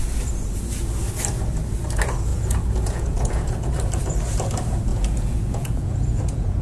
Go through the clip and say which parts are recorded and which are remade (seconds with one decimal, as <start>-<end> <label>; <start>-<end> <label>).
0.0-2.3 recorded; 2.3-3.7 remade; 3.7-4.9 recorded; 4.9-6.6 remade